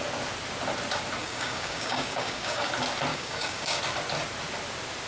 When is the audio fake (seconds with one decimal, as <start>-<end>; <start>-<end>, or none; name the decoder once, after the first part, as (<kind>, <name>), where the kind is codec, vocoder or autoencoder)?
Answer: 1.2-2.7 (codec, DAC); 3.1-3.8